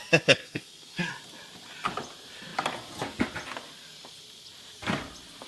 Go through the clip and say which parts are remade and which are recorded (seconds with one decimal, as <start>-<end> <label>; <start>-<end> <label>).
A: 0.0-0.4 recorded; 0.4-1.1 remade; 1.1-5.5 recorded